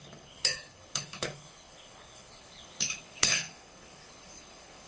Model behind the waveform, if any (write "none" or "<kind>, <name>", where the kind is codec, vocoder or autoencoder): codec, HILCodec